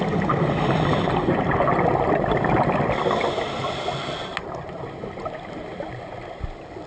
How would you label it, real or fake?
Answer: real